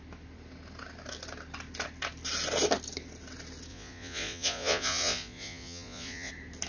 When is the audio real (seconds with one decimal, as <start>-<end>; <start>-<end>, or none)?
0.0-3.7; 6.3-6.7